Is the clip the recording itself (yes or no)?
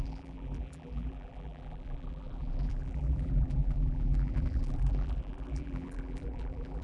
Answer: no